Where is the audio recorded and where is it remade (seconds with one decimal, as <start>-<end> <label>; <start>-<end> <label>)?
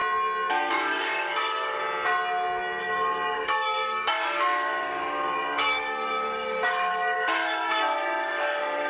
0.0-0.7 recorded; 0.7-1.8 remade; 1.8-2.8 recorded; 2.8-8.9 remade